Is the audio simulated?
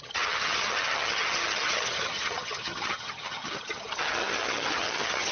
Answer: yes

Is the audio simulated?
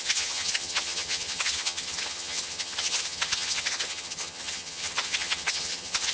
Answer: yes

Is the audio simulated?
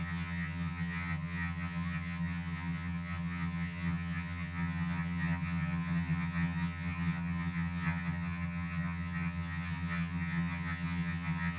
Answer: yes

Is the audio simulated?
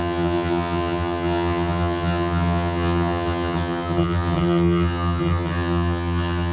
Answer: yes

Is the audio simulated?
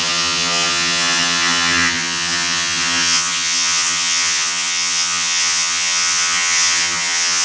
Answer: yes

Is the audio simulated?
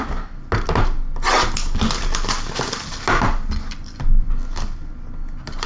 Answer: no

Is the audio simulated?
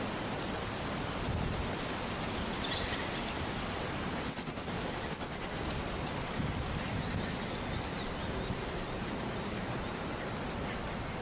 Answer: no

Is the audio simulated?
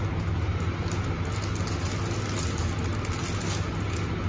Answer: no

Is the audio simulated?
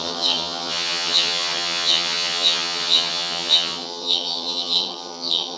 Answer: yes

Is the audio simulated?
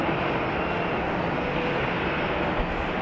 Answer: no